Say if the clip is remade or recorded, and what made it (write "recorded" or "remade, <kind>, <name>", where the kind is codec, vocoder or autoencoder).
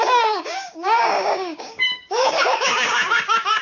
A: remade, codec, DAC